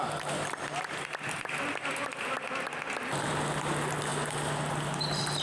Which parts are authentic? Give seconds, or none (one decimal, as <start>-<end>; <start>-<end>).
0.0-5.4